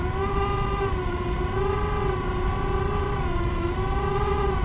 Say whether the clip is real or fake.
real